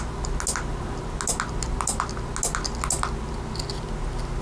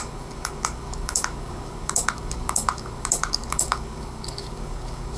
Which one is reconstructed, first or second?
second